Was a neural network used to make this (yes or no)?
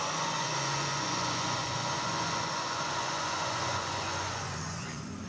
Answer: yes